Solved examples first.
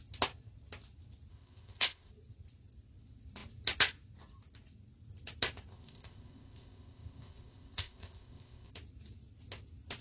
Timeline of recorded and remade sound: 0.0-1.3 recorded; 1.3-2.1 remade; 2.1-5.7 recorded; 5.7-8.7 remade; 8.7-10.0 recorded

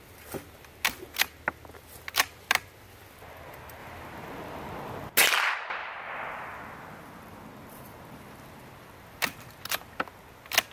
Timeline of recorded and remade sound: 0.0-10.7 recorded

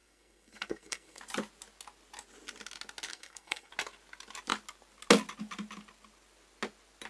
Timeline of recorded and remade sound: 0.0-1.2 remade; 1.2-3.1 recorded; 3.1-3.7 remade; 3.7-7.1 recorded

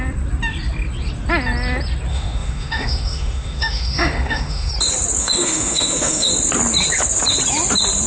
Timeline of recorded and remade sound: 0.0-2.1 recorded; 2.1-4.7 remade; 4.7-5.2 recorded; 5.2-6.3 remade; 6.3-8.1 recorded

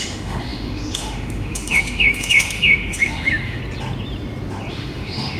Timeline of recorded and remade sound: 0.0-3.6 remade; 3.6-4.7 recorded; 4.7-5.4 remade